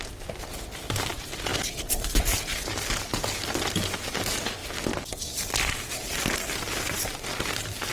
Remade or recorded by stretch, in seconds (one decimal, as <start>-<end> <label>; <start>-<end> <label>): 0.0-7.9 recorded